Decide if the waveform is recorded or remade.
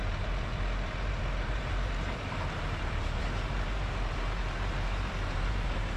remade